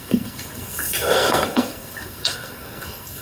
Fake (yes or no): yes